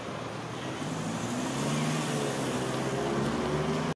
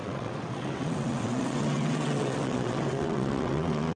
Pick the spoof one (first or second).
second